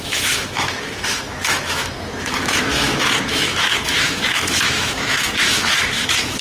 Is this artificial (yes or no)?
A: yes